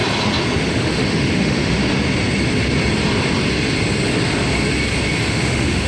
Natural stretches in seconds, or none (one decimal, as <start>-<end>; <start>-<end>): 0.0-0.7; 1.8-5.3